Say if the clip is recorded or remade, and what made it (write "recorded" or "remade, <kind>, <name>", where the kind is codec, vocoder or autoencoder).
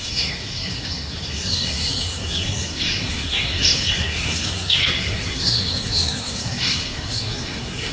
remade, codec, SNAC